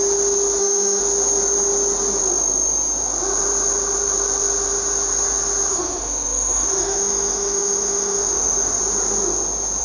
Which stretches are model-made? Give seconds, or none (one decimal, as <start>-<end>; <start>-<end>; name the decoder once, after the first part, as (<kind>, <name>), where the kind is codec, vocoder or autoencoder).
0.6-1.0 (autoencoder, DAC-VAE); 5.7-8.8